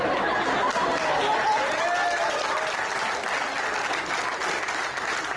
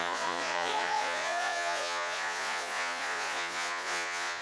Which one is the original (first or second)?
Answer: first